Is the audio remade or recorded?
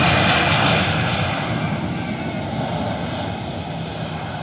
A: recorded